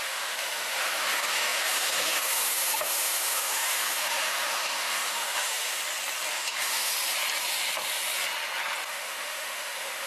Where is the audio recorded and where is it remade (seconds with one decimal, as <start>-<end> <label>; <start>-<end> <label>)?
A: 0.0-5.8 remade; 5.8-6.4 recorded; 6.4-6.9 remade; 6.9-8.9 recorded; 8.9-10.1 remade